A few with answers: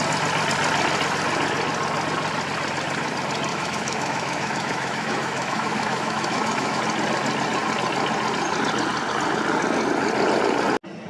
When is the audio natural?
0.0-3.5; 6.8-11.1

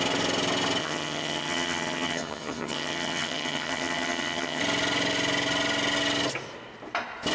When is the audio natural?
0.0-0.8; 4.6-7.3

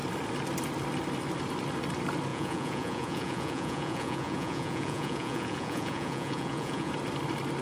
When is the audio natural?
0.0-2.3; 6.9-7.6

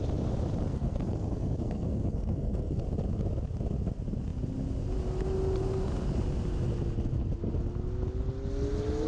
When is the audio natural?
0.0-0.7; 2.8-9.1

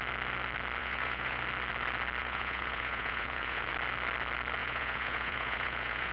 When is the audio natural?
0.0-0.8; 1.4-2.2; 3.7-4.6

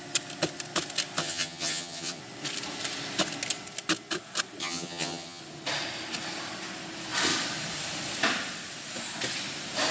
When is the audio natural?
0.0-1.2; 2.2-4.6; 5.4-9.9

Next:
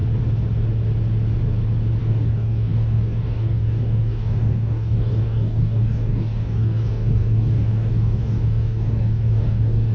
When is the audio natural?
0.0-2.0

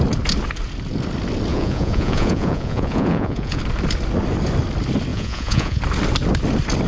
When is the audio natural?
0.0-1.5; 3.6-5.1; 5.8-6.9